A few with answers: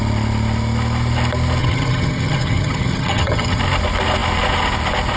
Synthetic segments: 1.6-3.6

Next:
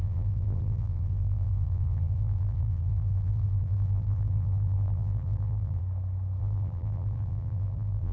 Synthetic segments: 0.0-5.8; 6.4-8.1

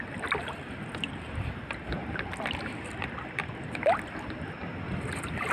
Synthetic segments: none

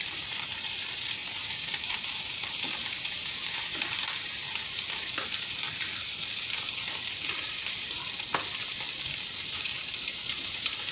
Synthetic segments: 0.0-5.9; 7.3-8.3; 9.4-10.9

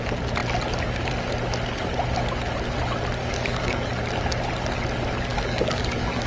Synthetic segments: 3.2-3.9; 5.3-6.3

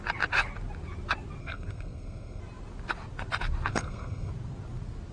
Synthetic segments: 1.4-2.4; 3.7-4.3

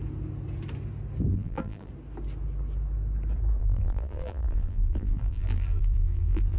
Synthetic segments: 1.3-1.9; 3.6-6.6